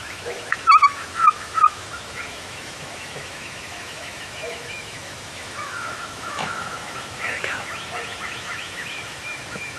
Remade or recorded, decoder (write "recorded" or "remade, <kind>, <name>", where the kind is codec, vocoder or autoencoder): remade, autoencoder, DAC-VAE